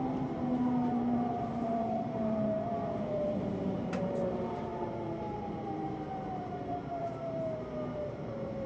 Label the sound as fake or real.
fake